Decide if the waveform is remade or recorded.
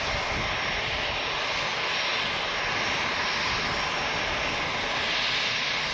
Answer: recorded